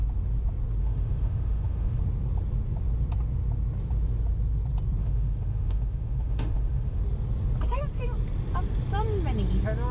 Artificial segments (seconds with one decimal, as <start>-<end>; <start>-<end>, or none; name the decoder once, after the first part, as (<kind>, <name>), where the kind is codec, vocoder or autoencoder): 0.8-2.0 (autoencoder, DAC-VAE); 5.0-7.0